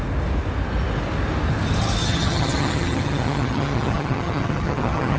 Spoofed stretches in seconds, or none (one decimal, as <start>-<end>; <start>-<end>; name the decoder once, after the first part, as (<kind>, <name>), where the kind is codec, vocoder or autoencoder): 2.0-5.2 (vocoder, HiFi-GAN)